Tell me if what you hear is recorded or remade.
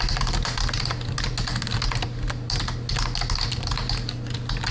recorded